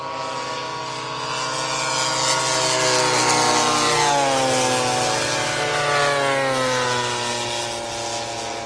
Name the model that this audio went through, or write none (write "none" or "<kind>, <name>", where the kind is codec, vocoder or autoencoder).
none